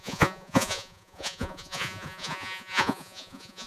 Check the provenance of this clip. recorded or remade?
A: remade